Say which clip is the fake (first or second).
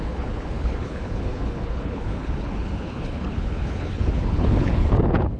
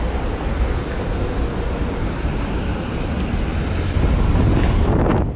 first